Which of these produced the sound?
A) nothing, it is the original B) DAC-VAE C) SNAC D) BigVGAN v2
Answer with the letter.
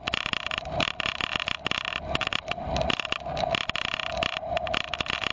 A